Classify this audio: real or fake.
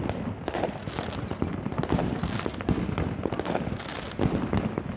real